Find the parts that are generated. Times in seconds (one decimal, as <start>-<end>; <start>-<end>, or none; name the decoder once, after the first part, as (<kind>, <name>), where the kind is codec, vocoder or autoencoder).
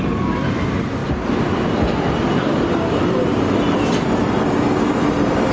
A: none